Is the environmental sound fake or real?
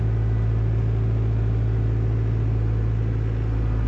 real